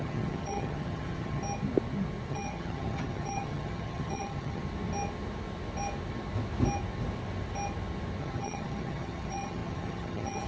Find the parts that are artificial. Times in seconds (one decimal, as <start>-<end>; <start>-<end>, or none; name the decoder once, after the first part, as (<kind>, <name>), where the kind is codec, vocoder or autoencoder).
0.0-1.4 (vocoder, HiFi-GAN); 2.3-4.6; 8.2-10.5